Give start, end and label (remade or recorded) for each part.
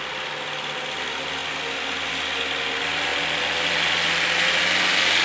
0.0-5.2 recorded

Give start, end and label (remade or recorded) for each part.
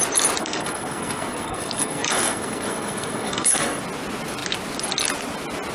0.0-0.4 recorded; 0.4-3.8 remade; 3.8-5.7 recorded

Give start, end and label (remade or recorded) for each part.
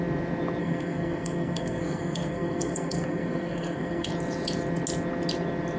0.0-0.6 recorded; 0.6-4.1 remade; 4.1-5.8 recorded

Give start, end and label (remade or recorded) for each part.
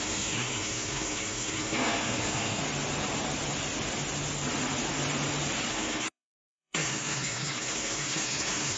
0.0-2.6 remade; 2.6-5.7 recorded; 5.7-8.8 remade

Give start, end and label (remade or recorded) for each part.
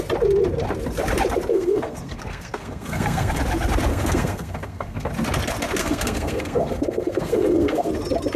0.0-1.5 recorded; 1.5-3.4 remade; 3.4-3.9 recorded; 3.9-5.1 remade; 5.1-5.8 recorded; 5.8-7.9 remade; 7.9-8.4 recorded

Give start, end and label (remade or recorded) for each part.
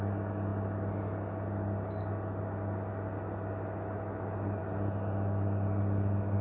0.0-6.4 recorded